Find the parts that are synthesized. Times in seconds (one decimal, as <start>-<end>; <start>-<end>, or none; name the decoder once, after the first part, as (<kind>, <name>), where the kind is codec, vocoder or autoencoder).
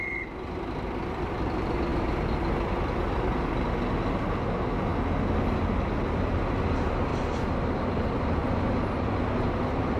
none